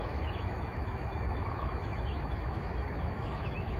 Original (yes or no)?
no